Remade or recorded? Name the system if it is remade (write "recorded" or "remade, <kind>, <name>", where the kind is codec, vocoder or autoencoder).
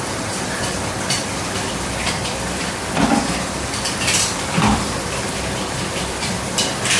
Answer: remade, vocoder, BigVGAN v2